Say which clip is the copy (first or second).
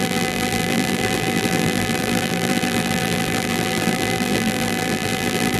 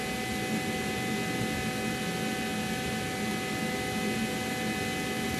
first